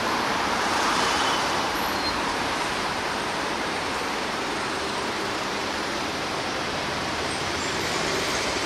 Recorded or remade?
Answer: remade